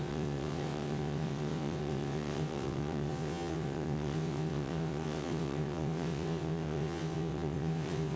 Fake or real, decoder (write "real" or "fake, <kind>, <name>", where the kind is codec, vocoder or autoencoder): fake, vocoder, WaveNeXt